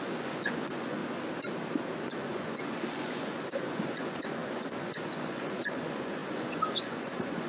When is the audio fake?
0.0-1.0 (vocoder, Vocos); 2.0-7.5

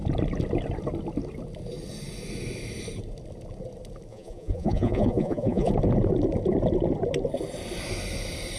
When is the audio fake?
4.1-5.7 (vocoder, Vocos)

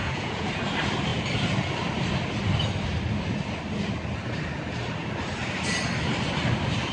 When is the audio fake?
0.0-0.5 (vocoder, Vocos)